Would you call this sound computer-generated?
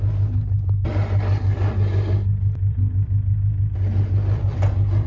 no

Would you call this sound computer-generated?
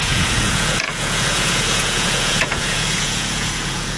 yes